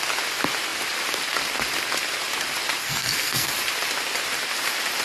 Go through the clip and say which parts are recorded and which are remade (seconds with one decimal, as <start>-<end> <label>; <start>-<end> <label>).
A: 0.0-2.8 recorded; 2.8-3.5 remade; 3.5-5.0 recorded